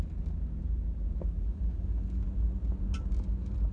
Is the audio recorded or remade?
recorded